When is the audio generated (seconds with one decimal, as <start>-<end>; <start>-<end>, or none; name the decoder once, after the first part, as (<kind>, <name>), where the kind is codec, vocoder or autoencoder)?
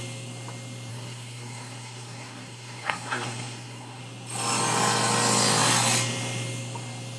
0.9-4.0 (codec, SNAC)